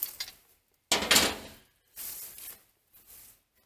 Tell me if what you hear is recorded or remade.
recorded